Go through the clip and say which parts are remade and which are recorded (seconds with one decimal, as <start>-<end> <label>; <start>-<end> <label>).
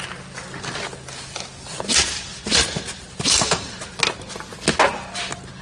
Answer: 0.0-2.3 recorded; 2.3-4.0 remade; 4.0-5.6 recorded